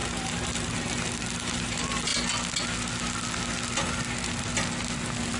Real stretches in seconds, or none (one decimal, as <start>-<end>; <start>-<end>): 0.0-5.4